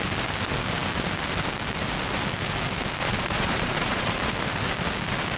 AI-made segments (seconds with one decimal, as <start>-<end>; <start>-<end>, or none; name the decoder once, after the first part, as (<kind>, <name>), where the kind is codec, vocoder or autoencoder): 3.0-4.3 (vocoder, Vocos)